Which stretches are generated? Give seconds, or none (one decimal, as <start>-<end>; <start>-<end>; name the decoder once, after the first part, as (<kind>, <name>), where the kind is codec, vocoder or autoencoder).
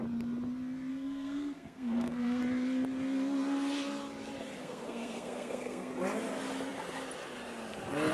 0.9-2.4 (codec, SNAC); 4.6-5.9